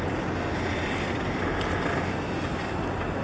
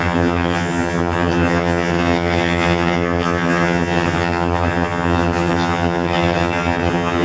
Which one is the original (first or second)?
first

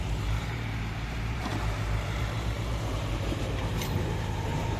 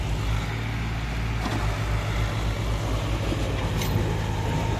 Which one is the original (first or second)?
second